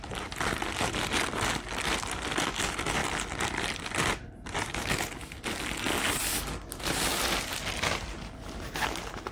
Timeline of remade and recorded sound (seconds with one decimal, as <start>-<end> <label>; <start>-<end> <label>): 0.0-3.0 recorded; 3.0-4.9 remade; 4.9-9.3 recorded